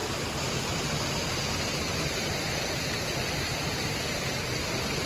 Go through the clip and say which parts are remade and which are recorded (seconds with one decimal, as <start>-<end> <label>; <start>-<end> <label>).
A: 0.0-5.1 recorded